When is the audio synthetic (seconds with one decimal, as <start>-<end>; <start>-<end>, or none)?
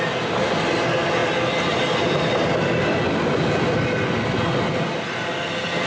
none